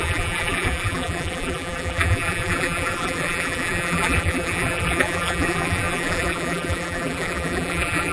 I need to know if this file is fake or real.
fake